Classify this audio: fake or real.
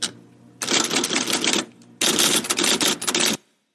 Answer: real